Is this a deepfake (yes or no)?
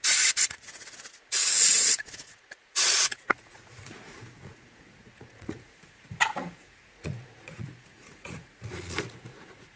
yes